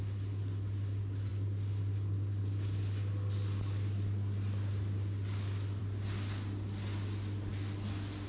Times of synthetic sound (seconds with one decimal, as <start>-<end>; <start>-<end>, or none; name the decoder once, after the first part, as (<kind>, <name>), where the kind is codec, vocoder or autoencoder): none